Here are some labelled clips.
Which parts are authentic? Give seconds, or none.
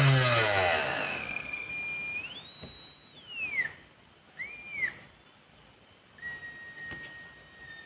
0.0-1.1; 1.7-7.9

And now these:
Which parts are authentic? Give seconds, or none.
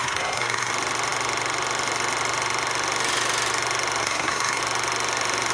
0.7-4.0; 4.6-5.5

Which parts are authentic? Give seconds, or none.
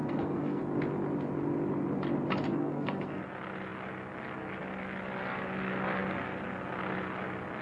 0.6-2.5; 3.2-7.6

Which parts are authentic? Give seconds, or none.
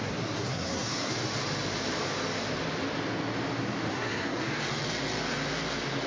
1.1-3.9; 4.4-6.1